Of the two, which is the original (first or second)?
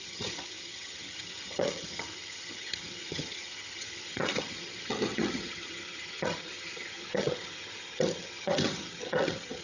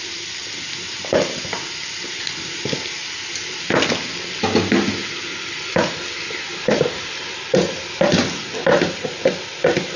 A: second